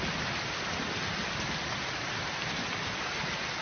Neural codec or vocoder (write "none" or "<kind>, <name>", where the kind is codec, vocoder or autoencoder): none